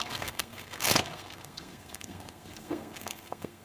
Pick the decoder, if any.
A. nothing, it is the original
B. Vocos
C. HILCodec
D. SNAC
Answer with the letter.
D